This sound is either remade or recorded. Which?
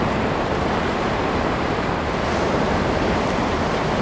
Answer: remade